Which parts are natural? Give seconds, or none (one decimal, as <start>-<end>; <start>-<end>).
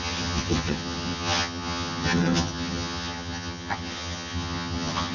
none